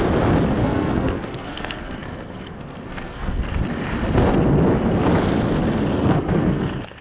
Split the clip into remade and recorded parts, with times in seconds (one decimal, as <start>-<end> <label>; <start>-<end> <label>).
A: 0.0-0.6 recorded; 0.6-3.5 remade; 3.5-5.9 recorded; 5.9-6.6 remade; 6.6-7.0 recorded